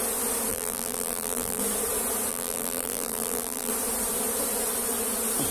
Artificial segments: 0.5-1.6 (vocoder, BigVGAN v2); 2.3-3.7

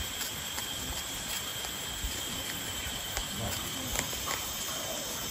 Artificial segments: 0.0-1.5 (vocoder, BigVGAN v2); 2.3-3.2; 4.5-5.3

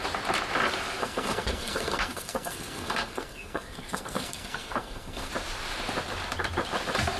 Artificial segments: 1.0-5.3 (codec, SNAC)

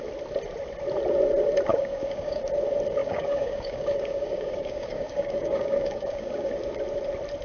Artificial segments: 1.7-2.4 (codec, DAC); 3.0-6.5

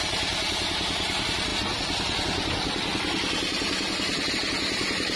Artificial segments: none